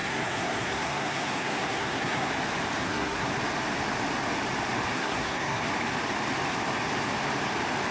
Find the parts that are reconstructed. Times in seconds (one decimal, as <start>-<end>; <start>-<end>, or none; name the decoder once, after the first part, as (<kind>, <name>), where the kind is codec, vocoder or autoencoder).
0.0-2.3 (codec, SNAC); 2.8-3.3; 4.9-5.6